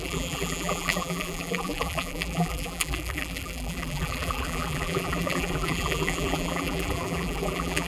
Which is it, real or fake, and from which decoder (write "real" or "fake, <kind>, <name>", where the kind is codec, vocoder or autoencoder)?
fake, vocoder, BigVGAN v2